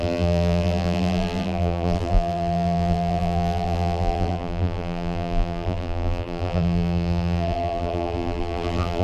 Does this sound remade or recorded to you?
remade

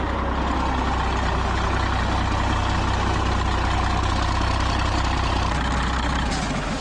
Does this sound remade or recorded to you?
recorded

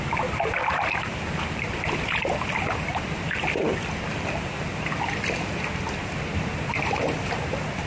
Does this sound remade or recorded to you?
recorded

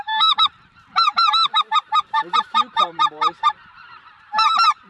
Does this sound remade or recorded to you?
remade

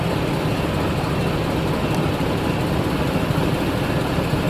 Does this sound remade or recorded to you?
remade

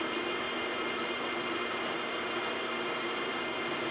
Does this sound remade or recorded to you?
remade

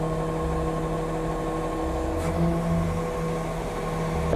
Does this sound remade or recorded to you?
recorded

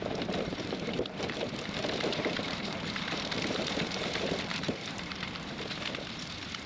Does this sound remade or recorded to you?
remade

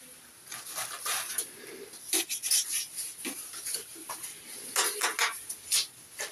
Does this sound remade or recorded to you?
recorded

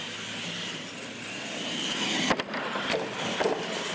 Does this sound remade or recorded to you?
recorded